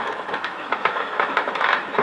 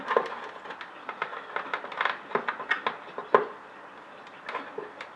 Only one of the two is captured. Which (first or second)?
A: second